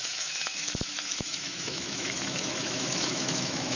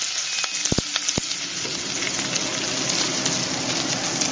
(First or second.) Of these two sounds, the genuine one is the second